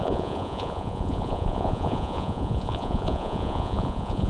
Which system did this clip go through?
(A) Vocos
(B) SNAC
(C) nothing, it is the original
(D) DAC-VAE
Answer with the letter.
A